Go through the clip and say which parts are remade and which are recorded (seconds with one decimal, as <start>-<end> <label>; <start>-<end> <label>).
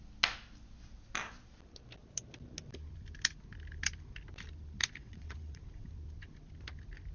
0.0-5.0 recorded; 5.0-5.9 remade; 5.9-7.1 recorded